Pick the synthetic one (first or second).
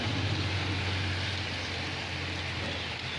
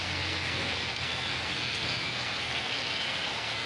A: second